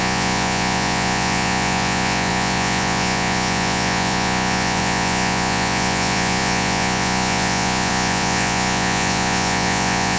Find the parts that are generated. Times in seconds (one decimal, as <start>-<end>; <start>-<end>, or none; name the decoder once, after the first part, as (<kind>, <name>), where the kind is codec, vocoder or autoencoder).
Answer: 0.0-10.2 (vocoder, Vocos)